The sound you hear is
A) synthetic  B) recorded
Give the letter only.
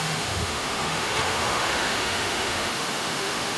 A